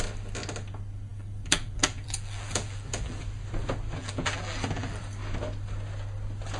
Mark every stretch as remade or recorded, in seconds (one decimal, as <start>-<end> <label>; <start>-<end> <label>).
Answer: 0.0-1.1 recorded; 1.1-3.2 remade; 3.2-4.0 recorded; 4.0-5.0 remade; 5.0-6.6 recorded